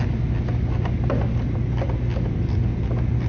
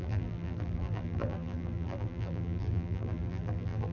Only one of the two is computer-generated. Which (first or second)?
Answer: second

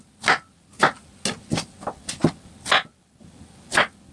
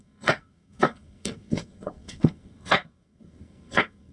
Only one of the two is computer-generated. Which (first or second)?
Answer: second